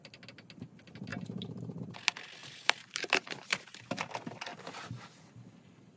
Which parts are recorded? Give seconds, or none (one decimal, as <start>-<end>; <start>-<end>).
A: 0.0-1.1; 1.8-2.4; 3.8-6.0